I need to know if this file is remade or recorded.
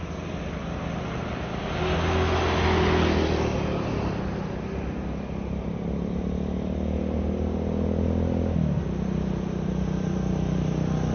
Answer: recorded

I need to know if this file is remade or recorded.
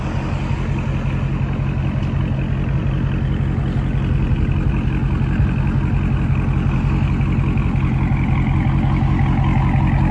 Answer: recorded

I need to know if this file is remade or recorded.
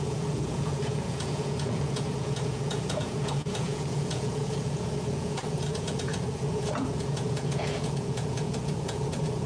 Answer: remade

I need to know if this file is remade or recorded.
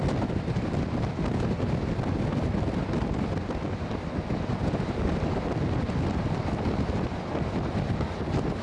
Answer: recorded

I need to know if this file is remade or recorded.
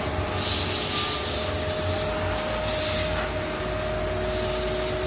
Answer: recorded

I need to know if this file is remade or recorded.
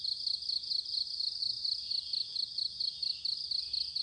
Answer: recorded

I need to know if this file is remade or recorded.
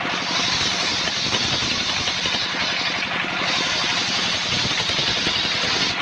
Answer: recorded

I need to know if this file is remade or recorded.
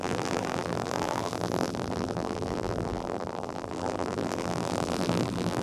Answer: remade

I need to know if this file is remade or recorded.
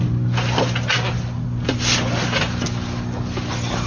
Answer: recorded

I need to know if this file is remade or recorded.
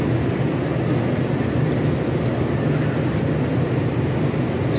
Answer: recorded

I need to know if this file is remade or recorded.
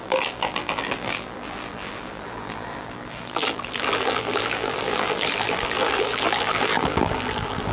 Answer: remade